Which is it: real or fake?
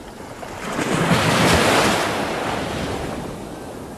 real